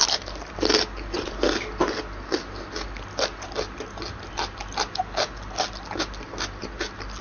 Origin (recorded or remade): recorded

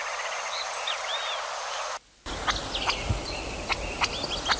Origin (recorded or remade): recorded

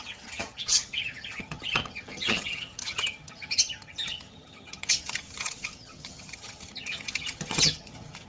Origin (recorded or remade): remade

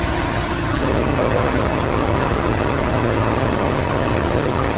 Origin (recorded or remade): remade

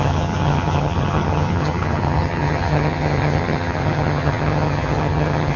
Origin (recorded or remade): remade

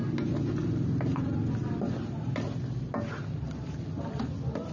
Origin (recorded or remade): recorded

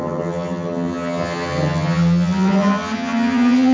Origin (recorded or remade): remade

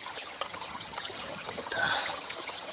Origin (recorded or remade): remade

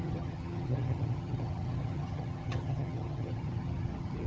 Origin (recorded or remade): remade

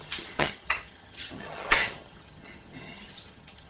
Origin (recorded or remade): remade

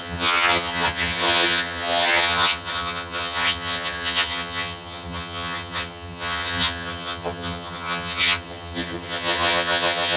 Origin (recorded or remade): remade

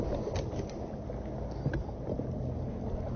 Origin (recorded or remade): recorded